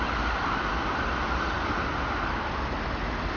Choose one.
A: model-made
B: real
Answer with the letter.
B